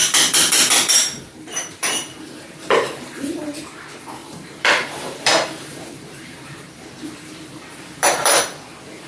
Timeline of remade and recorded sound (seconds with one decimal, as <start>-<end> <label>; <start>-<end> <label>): 0.0-3.4 remade; 3.4-4.2 recorded; 4.2-8.4 remade; 8.4-9.1 recorded